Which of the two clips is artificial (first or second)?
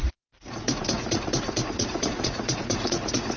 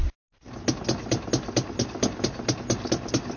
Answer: first